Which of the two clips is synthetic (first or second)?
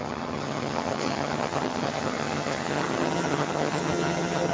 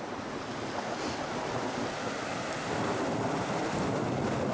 first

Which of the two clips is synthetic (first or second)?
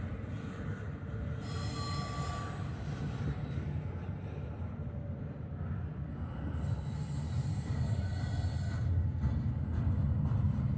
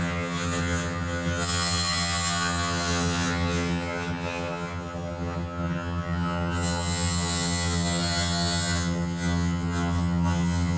second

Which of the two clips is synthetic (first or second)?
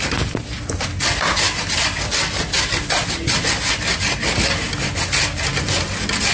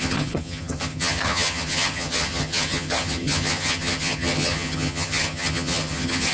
second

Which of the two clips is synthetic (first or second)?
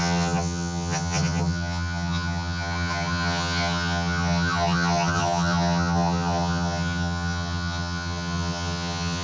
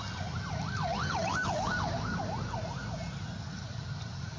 first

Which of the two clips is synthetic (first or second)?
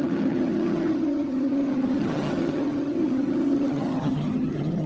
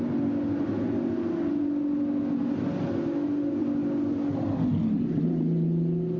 first